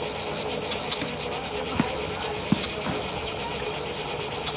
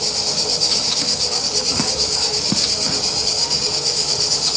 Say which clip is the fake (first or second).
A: second